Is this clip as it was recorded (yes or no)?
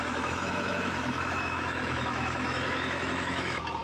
no